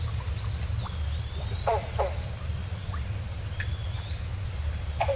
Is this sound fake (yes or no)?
yes